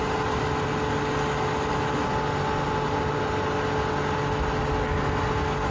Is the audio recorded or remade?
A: recorded